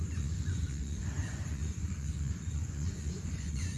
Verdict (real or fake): fake